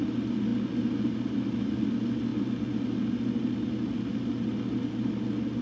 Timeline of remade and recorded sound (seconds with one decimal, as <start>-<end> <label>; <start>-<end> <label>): 0.0-5.6 recorded